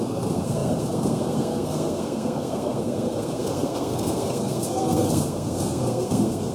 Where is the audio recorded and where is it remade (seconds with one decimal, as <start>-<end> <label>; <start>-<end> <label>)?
0.0-6.5 remade